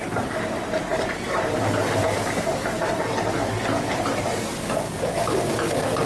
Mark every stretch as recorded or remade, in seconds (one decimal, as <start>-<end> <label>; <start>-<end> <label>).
0.0-0.9 recorded; 0.9-3.0 remade; 3.0-6.1 recorded